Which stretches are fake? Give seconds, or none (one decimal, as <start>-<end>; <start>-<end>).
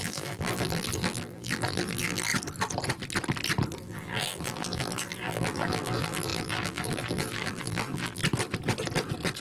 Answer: 0.0-2.3; 3.8-8.2